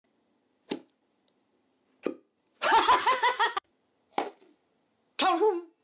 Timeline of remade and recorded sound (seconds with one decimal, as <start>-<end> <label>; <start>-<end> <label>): 0.0-3.0 recorded; 3.0-3.7 remade; 3.7-5.8 recorded